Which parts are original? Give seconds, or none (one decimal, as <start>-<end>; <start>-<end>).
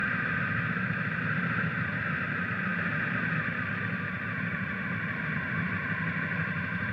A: none